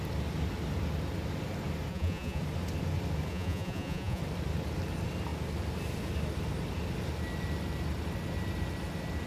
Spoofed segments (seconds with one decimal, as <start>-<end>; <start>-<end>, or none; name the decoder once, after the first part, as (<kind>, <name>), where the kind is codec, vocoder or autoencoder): 1.9-2.4 (vocoder, Vocos); 3.3-4.2